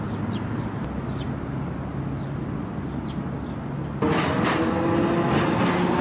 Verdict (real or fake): real